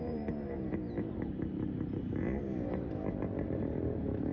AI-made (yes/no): yes